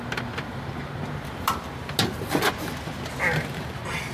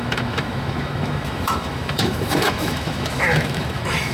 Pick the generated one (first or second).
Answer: second